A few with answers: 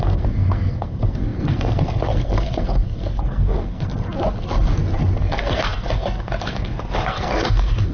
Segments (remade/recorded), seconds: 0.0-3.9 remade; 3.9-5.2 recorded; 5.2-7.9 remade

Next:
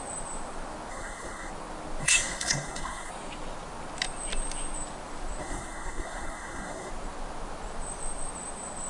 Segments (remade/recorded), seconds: 0.0-0.9 recorded; 0.9-1.5 remade; 1.5-2.0 recorded; 2.0-3.1 remade; 3.1-5.4 recorded; 5.4-6.9 remade; 6.9-8.9 recorded